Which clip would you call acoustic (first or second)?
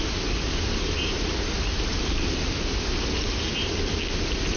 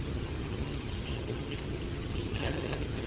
first